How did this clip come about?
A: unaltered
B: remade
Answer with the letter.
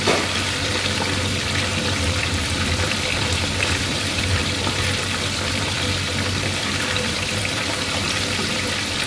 B